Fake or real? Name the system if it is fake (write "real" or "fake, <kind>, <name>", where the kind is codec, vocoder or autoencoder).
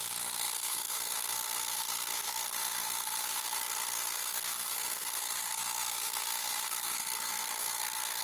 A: fake, codec, SNAC